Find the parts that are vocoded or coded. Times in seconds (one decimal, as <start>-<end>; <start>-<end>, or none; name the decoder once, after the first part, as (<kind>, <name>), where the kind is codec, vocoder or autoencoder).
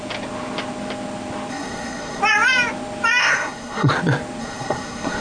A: 1.5-2.2 (codec, SNAC); 3.2-3.9; 4.4-5.2